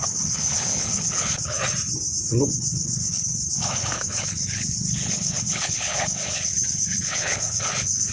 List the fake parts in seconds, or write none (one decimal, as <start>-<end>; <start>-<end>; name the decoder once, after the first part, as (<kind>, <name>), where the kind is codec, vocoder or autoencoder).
0.0-1.6 (codec, HILCodec); 2.3-8.1